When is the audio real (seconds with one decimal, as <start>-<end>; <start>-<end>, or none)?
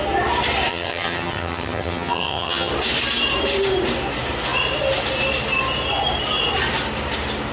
0.0-0.7; 2.7-7.5